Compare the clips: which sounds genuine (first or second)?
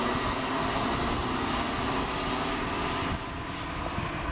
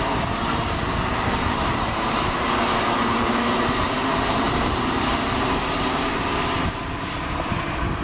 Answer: first